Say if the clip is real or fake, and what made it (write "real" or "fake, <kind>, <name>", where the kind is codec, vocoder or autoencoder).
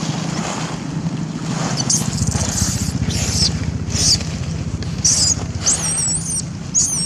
real